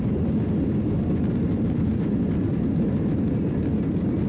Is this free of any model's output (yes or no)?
yes